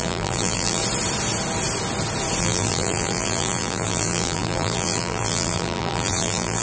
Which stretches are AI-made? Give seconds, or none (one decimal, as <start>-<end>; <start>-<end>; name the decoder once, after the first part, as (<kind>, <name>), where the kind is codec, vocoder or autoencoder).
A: 0.0-0.8 (vocoder, BigVGAN v2); 2.4-6.6

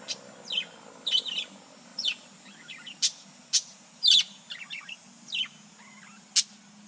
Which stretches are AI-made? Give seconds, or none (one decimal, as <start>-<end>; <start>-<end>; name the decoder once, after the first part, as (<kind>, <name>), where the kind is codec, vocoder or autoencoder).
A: none

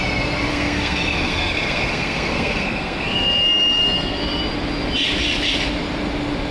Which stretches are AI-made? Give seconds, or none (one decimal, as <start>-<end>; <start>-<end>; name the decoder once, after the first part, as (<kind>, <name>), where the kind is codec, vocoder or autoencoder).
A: 0.5-4.4 (codec, SNAC)

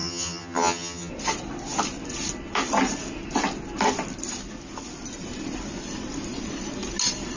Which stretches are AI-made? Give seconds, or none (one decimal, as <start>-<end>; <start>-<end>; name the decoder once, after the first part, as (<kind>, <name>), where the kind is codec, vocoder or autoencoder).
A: 0.0-1.1 (vocoder, HiFi-GAN)

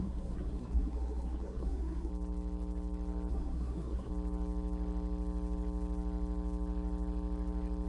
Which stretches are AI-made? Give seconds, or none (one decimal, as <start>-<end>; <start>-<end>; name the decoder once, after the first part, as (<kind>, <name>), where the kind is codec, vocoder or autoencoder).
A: 0.0-2.1 (codec, SNAC); 3.3-4.1